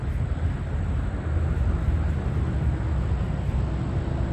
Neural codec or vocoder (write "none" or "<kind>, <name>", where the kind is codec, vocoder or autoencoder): none